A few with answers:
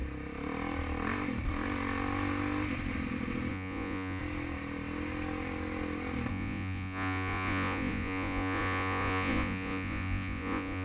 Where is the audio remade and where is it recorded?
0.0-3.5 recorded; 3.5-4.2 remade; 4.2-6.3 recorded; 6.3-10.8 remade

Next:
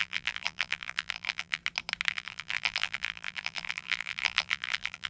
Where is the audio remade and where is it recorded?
0.0-1.6 remade; 1.6-2.1 recorded; 2.1-5.1 remade

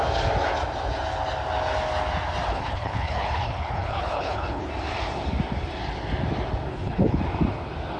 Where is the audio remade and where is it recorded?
0.0-2.5 recorded; 2.5-4.7 remade; 4.7-6.7 recorded; 6.7-7.2 remade; 7.2-8.0 recorded

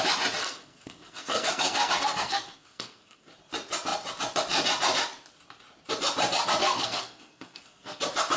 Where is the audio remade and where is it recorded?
0.0-0.4 recorded; 0.4-3.3 remade; 3.3-6.6 recorded; 6.6-8.0 remade; 8.0-8.4 recorded

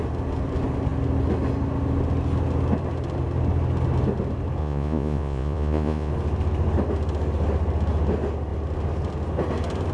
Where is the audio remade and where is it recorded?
0.0-4.6 recorded; 4.6-6.1 remade; 6.1-9.9 recorded

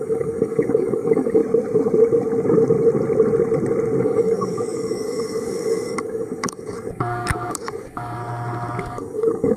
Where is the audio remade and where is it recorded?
0.0-1.4 remade; 1.4-4.0 recorded; 4.0-8.2 remade; 8.2-8.8 recorded; 8.8-9.6 remade

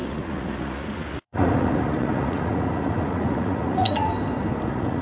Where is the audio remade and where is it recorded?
0.0-4.1 remade; 4.1-4.6 recorded; 4.6-5.0 remade

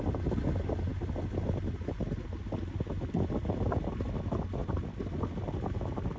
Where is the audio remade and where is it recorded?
0.0-4.6 recorded; 4.6-5.1 remade; 5.1-6.2 recorded